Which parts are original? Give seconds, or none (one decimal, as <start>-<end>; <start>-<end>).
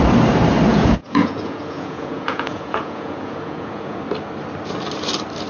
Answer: 0.0-0.7; 4.0-5.5